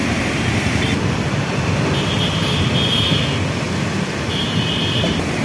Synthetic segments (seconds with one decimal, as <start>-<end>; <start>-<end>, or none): 0.0-1.6